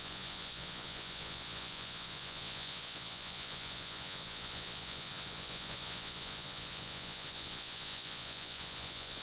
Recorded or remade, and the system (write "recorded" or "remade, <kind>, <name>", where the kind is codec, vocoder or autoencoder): remade, vocoder, Vocos